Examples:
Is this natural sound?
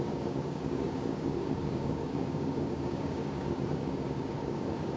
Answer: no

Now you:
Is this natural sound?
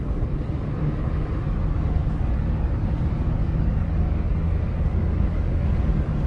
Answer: no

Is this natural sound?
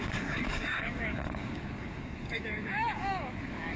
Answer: no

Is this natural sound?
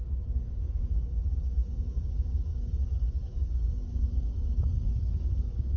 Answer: no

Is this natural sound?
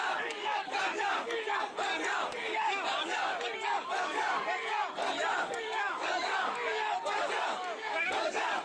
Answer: no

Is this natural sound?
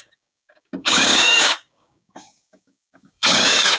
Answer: no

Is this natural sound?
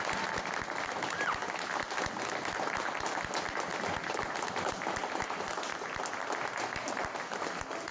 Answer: yes